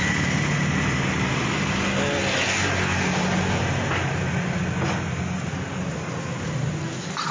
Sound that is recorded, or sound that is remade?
recorded